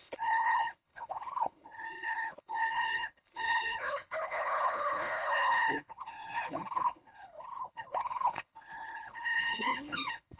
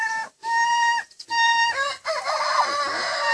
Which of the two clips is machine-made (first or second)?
first